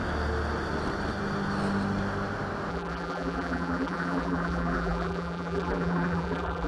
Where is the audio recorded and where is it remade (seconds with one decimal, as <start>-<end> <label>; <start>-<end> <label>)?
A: 0.0-2.7 recorded; 2.7-6.7 remade